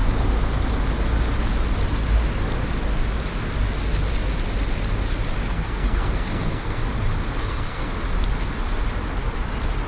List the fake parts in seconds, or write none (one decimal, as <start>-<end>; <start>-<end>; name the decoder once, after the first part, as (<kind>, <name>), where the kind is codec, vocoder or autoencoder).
5.4-6.8 (codec, SNAC); 7.4-7.9